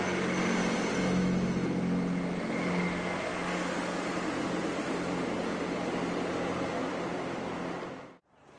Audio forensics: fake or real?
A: real